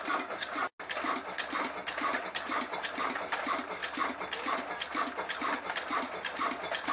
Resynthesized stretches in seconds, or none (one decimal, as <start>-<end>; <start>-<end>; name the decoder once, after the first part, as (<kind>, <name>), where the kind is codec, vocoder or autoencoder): 0.0-0.6 (vocoder, BigVGAN v2); 2.3-3.8; 5.4-6.9